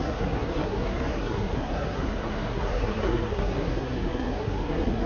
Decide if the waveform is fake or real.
fake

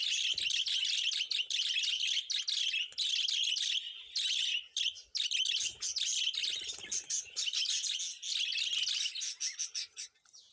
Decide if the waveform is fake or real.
real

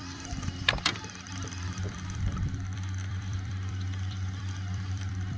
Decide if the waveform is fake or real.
fake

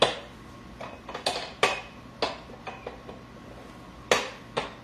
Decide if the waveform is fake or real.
real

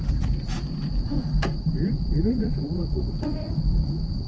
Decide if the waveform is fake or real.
fake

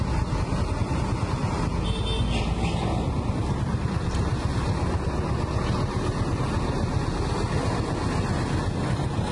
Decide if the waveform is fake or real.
real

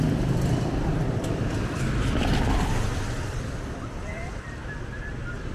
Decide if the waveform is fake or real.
fake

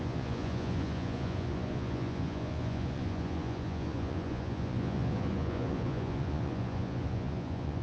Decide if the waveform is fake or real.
fake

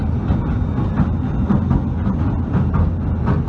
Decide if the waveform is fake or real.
real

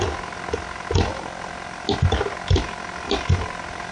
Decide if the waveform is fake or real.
real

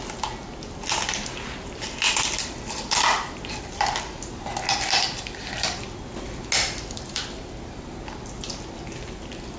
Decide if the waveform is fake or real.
real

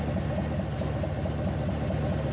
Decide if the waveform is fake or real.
real